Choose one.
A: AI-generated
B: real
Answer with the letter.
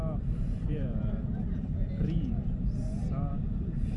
A